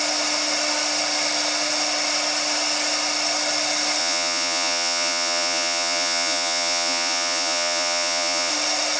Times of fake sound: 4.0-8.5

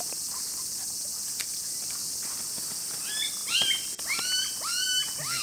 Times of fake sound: none

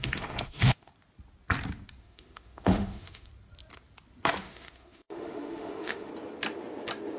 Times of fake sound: 0.0-0.9; 2.0-3.3; 4.4-6.1